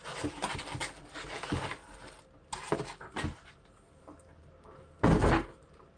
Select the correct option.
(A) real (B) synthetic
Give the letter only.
A